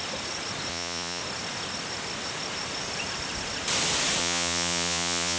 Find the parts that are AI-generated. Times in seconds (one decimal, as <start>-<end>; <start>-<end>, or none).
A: 0.7-1.2; 4.2-5.4